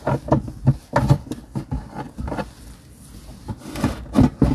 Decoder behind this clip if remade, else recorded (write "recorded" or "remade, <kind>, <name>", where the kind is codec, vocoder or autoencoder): recorded